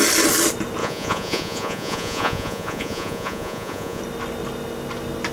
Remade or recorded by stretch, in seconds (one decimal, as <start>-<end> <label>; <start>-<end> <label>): 0.0-0.8 recorded; 0.8-4.0 remade; 4.0-5.3 recorded